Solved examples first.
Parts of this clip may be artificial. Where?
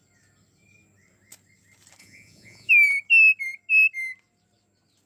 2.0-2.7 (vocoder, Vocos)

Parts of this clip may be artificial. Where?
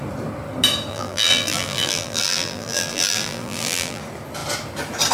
0.9-4.0 (vocoder, BigVGAN v2)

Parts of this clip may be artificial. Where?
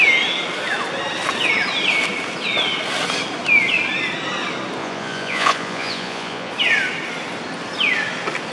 4.8-6.5 (vocoder, Vocos)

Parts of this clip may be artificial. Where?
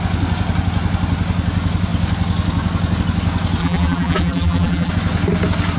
3.6-4.9 (vocoder, BigVGAN v2)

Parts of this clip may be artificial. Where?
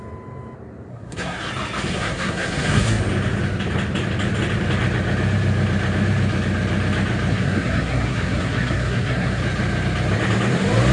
0.9-1.5 (codec, SNAC); 1.9-3.0; 7.3-9.4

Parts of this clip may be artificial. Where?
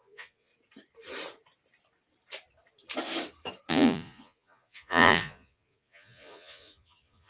0.0-0.5 (vocoder, Vocos); 3.7-7.3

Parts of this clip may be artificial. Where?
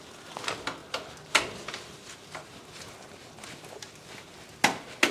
none